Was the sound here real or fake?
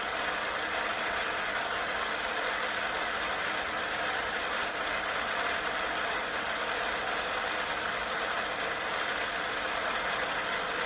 real